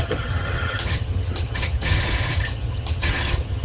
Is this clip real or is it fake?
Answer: fake